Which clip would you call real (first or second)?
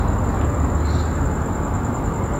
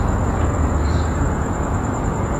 first